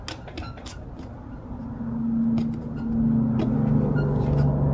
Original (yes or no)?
yes